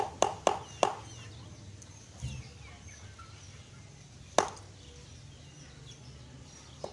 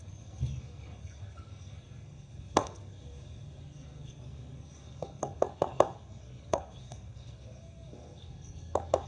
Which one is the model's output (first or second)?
second